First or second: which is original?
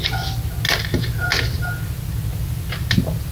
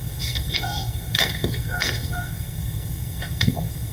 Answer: first